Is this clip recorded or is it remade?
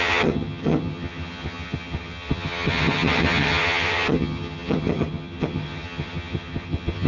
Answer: remade